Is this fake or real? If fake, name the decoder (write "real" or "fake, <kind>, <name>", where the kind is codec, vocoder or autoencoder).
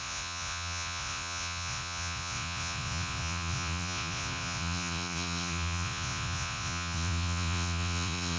fake, vocoder, Vocos